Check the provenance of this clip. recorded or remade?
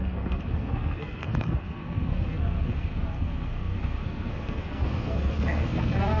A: remade